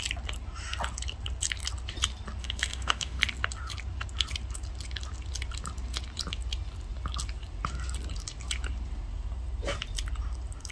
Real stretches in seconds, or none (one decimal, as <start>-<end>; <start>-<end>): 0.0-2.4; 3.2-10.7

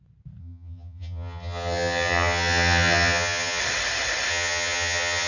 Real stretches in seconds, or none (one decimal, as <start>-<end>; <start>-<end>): 0.0-0.4; 3.6-4.3

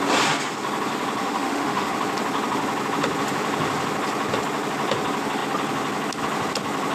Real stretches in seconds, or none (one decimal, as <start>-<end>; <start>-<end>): 0.0-1.2; 1.9-6.9